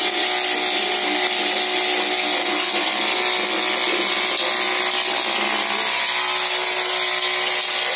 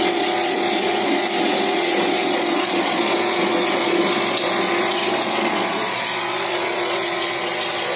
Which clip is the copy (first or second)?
second